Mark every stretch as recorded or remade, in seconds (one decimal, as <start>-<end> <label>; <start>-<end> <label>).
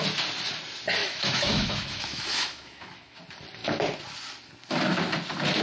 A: 0.0-1.0 recorded; 1.0-3.2 remade; 3.2-5.6 recorded